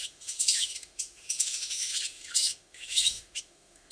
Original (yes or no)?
no